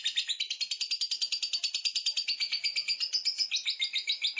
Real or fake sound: real